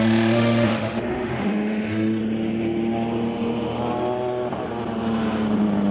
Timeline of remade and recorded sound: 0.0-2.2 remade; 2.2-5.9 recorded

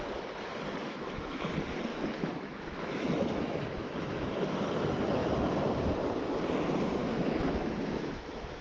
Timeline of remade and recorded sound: 0.0-0.8 recorded; 0.8-1.5 remade; 1.5-1.9 recorded; 1.9-4.7 remade; 4.7-7.0 recorded; 7.0-8.6 remade

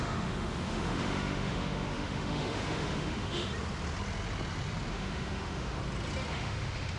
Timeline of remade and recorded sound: 0.0-3.5 remade; 3.5-4.9 recorded; 4.9-5.8 remade; 5.8-6.3 recorded; 6.3-7.0 remade